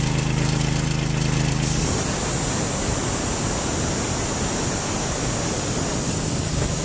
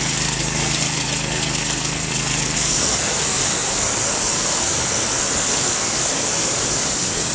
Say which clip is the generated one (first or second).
second